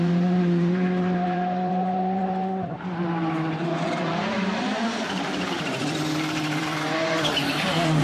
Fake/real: fake